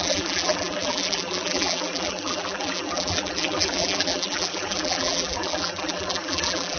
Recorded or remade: remade